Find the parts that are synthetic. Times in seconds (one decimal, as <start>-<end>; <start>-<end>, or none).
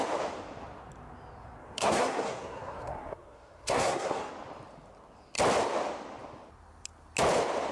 1.6-4.3